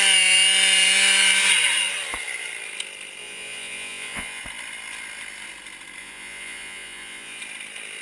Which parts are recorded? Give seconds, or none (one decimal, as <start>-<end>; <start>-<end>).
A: 0.0-3.2; 4.4-6.0; 7.4-8.0

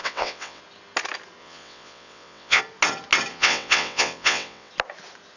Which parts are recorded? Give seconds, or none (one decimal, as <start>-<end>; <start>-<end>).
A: 0.6-1.4; 2.6-3.3; 4.7-5.4

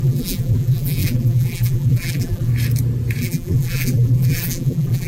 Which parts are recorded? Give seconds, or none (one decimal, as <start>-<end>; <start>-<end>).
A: 2.5-3.2